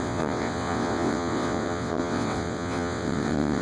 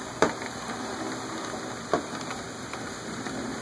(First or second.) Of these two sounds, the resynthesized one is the first